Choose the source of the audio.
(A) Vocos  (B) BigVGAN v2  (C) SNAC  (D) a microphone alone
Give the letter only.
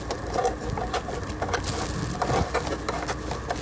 D